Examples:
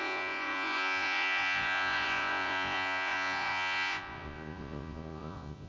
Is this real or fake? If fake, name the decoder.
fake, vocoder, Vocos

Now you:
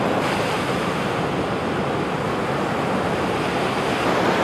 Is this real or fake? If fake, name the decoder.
real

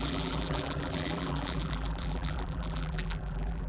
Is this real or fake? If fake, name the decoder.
fake, vocoder, BigVGAN v2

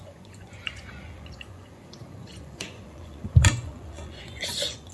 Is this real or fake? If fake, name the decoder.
fake, vocoder, Vocos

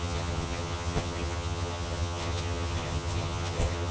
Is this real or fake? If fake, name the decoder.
fake, vocoder, HiFi-GAN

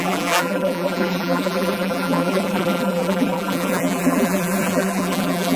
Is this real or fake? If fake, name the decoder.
fake, vocoder, BigVGAN v2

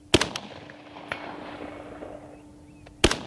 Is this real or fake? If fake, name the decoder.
real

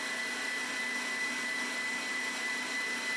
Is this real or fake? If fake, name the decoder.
fake, vocoder, BigVGAN v2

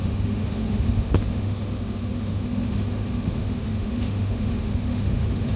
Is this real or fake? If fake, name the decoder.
fake, autoencoder, DAC-VAE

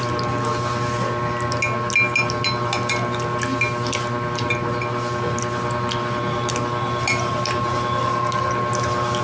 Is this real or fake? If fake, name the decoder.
real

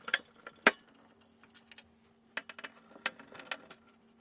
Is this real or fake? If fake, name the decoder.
real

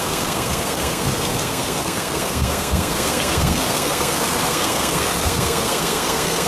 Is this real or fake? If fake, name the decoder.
fake, codec, SNAC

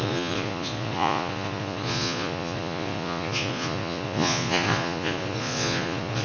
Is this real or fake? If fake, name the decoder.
fake, vocoder, Vocos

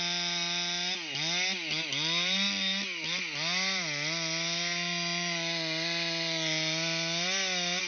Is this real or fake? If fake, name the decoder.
real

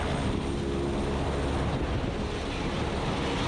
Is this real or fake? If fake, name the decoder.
real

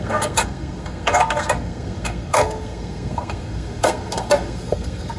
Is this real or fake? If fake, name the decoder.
fake, codec, SNAC